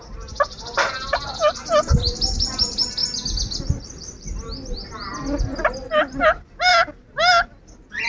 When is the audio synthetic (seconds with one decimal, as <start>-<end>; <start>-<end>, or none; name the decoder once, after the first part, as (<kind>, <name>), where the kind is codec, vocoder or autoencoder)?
none